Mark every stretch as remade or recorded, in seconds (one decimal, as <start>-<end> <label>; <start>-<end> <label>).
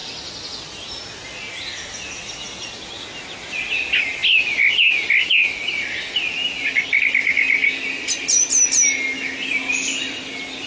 0.0-10.7 recorded